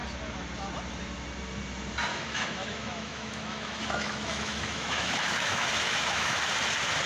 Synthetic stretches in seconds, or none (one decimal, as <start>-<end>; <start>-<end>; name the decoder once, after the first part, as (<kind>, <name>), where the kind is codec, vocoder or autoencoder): 2.1-6.4 (autoencoder, DAC-VAE)